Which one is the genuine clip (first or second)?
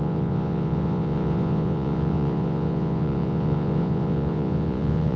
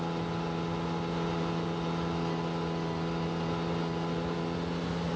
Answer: second